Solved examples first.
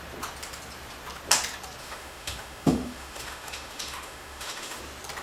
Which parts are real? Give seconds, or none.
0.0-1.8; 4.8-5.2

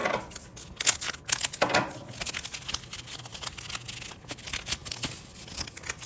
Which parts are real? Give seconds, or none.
0.0-6.1

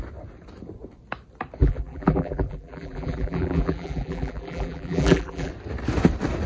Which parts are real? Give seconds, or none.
0.0-1.6; 5.5-6.5

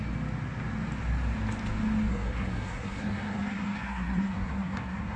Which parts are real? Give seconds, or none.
0.0-2.1

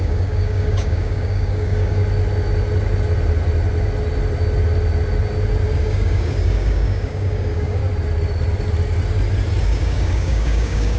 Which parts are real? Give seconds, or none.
2.0-5.8; 7.8-9.6

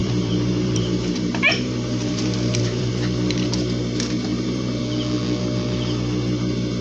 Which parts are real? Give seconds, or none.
2.9-4.3; 4.8-6.8